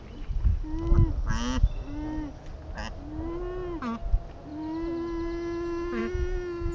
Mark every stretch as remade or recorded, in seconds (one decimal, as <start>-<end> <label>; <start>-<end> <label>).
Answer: 0.0-6.7 recorded